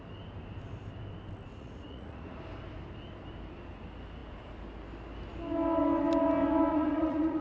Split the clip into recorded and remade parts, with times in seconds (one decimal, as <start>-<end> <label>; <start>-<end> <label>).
0.0-1.5 recorded; 1.5-2.4 remade; 2.4-6.7 recorded; 6.7-7.4 remade